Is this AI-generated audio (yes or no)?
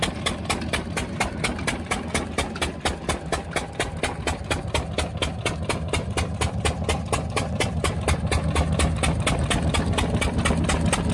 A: no